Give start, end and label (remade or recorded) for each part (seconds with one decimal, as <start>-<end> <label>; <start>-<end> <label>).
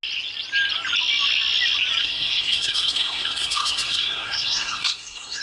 0.0-2.0 recorded; 2.0-5.4 remade